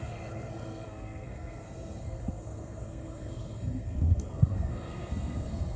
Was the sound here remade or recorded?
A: remade